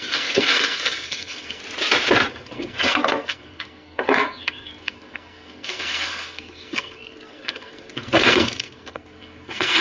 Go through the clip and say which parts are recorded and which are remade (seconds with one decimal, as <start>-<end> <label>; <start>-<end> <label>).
0.0-1.6 remade; 1.6-2.3 recorded; 2.3-9.8 remade